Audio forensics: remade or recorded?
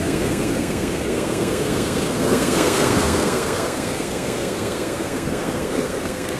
remade